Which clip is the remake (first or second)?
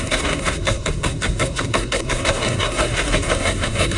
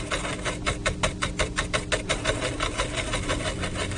first